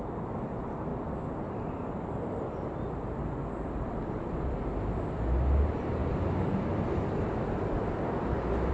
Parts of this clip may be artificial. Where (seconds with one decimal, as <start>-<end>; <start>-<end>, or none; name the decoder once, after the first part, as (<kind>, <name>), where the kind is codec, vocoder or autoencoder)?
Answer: 0.9-2.9 (vocoder, BigVGAN v2)